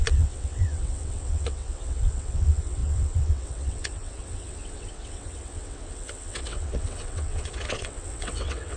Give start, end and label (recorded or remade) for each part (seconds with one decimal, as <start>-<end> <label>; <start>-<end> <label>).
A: 0.0-8.8 remade